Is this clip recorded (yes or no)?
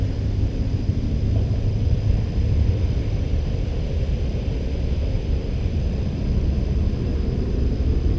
yes